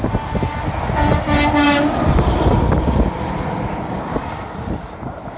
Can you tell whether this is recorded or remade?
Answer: recorded